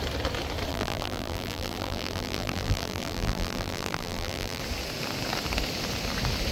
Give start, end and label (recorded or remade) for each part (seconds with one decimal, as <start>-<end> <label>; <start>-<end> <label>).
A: 0.0-0.7 recorded; 0.7-4.6 remade; 4.6-6.5 recorded